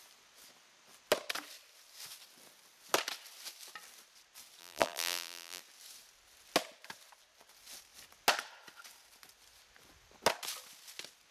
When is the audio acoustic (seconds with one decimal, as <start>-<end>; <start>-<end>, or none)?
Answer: 0.0-4.6; 5.6-11.3